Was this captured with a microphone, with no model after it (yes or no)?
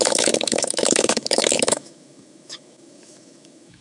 no